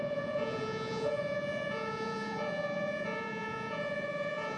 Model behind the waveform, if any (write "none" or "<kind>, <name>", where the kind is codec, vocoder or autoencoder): vocoder, Vocos